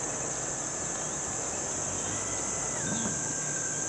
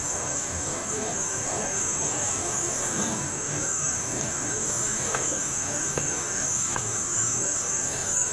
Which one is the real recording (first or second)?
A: first